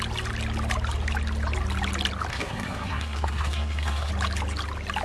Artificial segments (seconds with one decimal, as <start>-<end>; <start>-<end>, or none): 2.3-4.1